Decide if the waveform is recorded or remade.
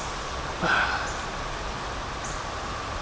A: recorded